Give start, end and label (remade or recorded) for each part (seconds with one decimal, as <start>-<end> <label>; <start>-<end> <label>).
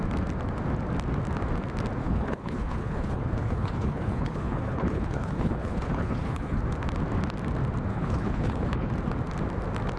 0.0-2.0 recorded; 2.0-6.6 remade; 6.6-7.9 recorded; 7.9-8.9 remade; 8.9-10.0 recorded